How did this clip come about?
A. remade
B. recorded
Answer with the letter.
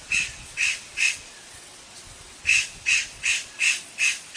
A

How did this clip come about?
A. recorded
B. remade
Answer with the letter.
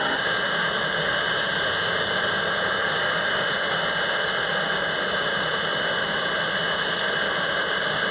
A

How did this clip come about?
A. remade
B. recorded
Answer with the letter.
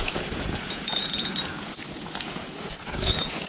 A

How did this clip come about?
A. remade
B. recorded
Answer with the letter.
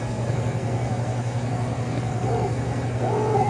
A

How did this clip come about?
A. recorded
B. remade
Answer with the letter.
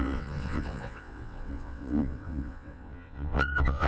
B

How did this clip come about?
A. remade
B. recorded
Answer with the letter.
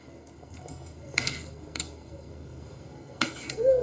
A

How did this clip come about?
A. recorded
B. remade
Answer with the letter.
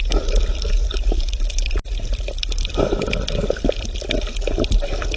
A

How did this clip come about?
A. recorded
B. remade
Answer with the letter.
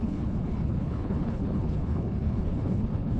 B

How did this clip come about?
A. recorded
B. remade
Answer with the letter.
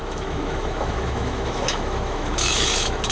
B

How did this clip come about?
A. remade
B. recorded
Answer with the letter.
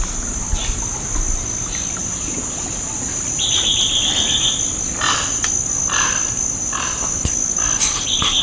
B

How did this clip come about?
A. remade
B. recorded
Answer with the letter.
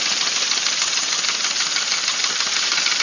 B